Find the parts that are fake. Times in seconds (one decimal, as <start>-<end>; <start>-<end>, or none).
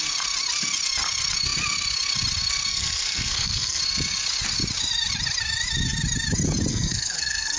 2.7-3.8; 6.7-7.6